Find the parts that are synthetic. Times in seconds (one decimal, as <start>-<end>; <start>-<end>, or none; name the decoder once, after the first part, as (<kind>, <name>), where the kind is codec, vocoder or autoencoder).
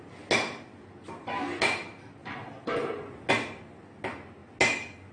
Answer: none